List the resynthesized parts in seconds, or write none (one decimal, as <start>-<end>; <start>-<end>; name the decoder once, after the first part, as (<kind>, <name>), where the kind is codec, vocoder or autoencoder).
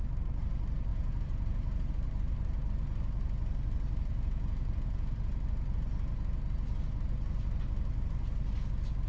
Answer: 0.9-1.9 (vocoder, Vocos); 4.1-5.3